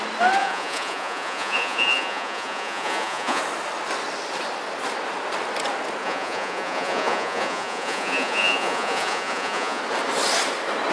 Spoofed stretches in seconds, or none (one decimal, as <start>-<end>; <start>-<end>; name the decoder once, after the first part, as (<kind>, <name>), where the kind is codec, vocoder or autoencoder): 0.4-3.4 (vocoder, Vocos); 6.0-9.8